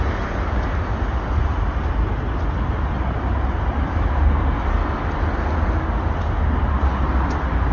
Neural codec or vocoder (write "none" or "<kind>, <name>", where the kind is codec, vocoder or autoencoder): none